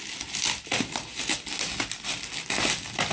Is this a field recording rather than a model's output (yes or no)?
yes